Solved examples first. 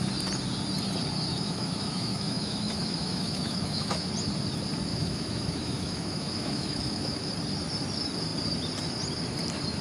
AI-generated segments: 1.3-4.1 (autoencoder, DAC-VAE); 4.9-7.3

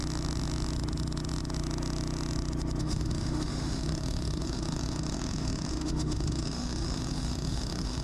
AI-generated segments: 2.8-8.0 (autoencoder, DAC-VAE)

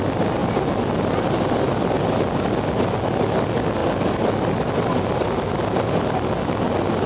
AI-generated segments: none

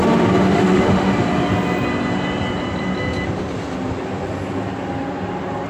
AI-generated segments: 0.5-1.1 (autoencoder, DAC-VAE)